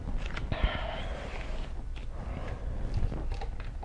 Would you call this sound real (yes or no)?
yes